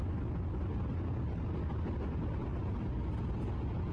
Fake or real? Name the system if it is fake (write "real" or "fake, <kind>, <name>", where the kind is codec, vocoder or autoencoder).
real